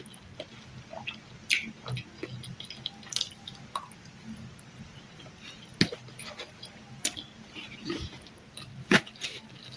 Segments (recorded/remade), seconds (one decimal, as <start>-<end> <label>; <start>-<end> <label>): 0.0-2.5 recorded; 2.5-3.5 remade; 3.5-5.7 recorded; 5.7-6.9 remade; 6.9-9.8 recorded